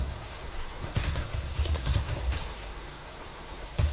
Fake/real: fake